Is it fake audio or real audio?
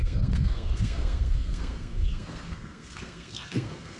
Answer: fake